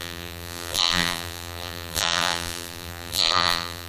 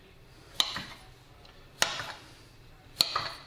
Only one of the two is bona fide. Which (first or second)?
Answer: second